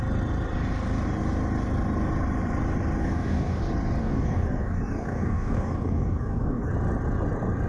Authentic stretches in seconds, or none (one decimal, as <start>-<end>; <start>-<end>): 0.0-3.0; 3.6-4.0; 6.7-7.7